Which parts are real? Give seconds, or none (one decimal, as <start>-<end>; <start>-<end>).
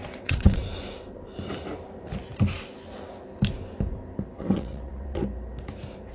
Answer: 0.6-4.3; 5.2-6.1